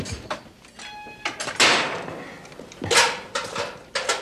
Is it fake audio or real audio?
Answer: real